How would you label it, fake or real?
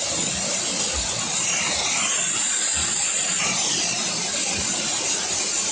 real